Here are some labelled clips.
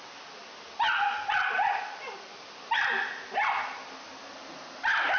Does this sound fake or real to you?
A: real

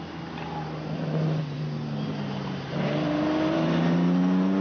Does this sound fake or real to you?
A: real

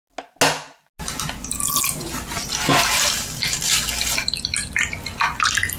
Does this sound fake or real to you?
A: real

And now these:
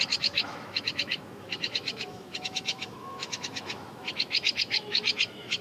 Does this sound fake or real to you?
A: fake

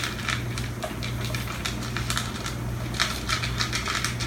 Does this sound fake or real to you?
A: real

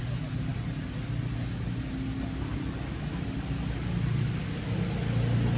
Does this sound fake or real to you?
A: real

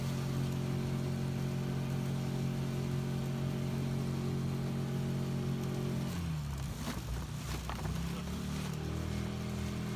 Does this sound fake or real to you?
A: real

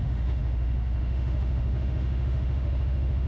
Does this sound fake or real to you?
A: fake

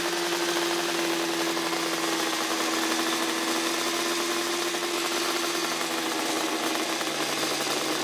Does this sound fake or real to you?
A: real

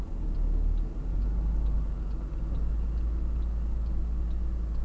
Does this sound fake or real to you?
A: real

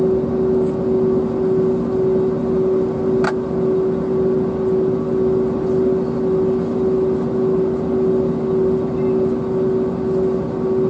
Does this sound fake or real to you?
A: real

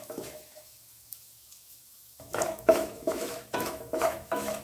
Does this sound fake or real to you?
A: fake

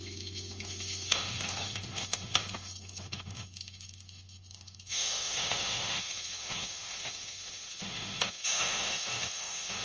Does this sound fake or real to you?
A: fake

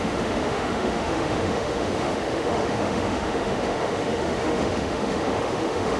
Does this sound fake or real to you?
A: fake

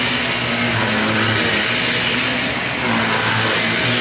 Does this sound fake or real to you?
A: real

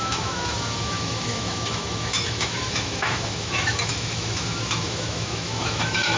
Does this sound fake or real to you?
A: fake